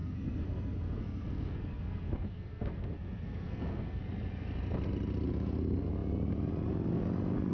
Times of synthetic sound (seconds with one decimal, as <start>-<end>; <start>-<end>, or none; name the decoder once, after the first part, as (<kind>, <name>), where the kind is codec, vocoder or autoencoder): 0.0-4.0 (codec, SNAC)